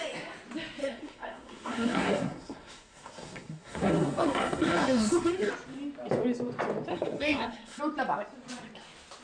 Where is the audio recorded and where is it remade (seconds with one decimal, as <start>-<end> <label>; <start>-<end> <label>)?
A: 0.0-0.8 recorded; 0.8-5.5 remade; 5.5-6.9 recorded; 6.9-7.8 remade; 7.8-9.2 recorded